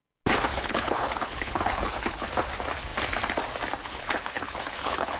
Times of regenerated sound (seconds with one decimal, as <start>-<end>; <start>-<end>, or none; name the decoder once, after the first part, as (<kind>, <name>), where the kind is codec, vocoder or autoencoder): 0.5-2.3 (codec, HILCodec); 3.8-5.2